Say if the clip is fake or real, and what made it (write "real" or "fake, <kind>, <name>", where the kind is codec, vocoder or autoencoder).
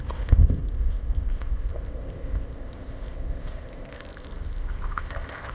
fake, codec, ZipCodec